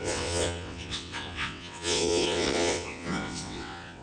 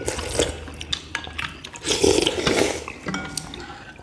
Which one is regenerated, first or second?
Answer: first